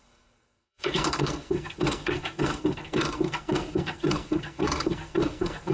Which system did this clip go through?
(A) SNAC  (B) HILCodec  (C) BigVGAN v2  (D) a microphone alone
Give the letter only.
A